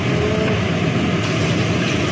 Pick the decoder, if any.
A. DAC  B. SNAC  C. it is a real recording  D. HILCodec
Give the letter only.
C